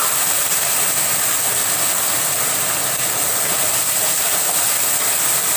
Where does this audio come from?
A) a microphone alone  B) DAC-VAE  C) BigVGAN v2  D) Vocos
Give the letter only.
C